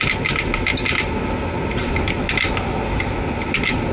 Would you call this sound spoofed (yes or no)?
no